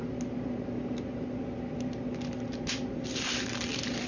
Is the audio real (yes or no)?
yes